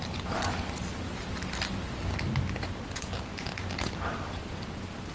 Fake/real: real